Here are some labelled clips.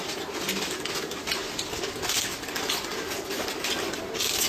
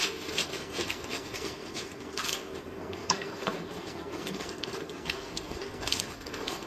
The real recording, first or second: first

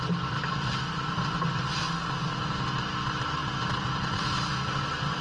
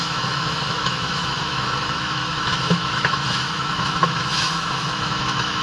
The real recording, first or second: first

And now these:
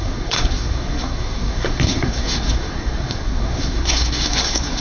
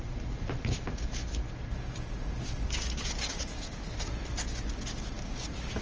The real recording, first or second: second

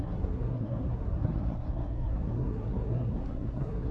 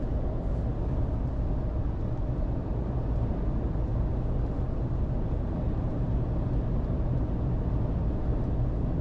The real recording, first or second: second